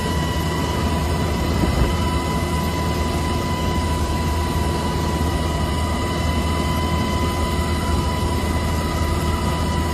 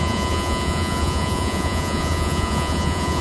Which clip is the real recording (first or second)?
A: first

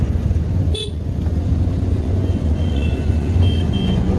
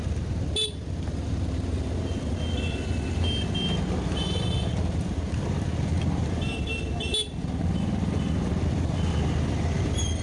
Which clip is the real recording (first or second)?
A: second